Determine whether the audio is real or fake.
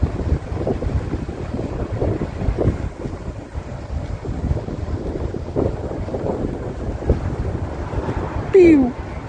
fake